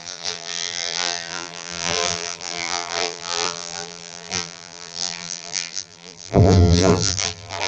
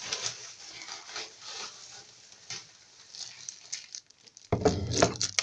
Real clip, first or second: second